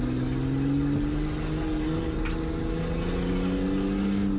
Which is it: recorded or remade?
recorded